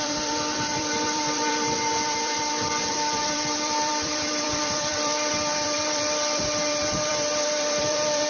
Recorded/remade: remade